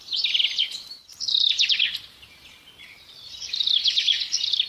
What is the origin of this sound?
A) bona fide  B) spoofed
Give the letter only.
A